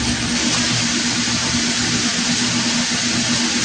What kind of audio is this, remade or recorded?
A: recorded